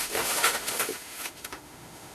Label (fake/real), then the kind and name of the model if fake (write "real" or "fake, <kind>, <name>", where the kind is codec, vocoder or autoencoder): fake, autoencoder, DAC-VAE